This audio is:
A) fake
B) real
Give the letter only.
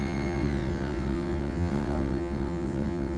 A